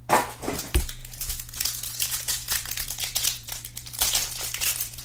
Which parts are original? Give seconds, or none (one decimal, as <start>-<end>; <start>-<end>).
none

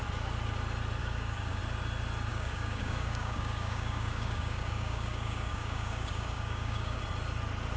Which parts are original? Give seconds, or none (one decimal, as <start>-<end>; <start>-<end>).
0.0-1.0; 1.6-2.3; 7.0-7.8

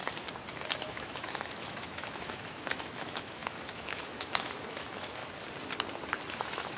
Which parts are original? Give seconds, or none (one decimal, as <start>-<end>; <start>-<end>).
0.0-0.9; 5.2-6.3

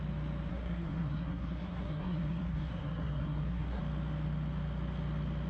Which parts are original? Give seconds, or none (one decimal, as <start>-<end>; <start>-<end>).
0.0-0.5; 3.8-5.5

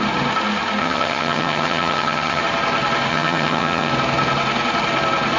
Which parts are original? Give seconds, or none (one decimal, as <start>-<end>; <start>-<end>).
0.0-0.8; 2.4-3.1; 3.9-5.4